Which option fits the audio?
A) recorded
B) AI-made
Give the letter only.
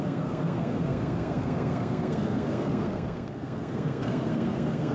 B